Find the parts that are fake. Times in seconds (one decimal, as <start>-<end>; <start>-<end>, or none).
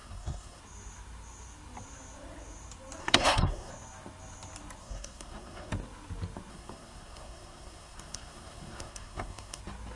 0.0-0.6; 3.0-3.7; 4.8-5.7; 6.5-9.6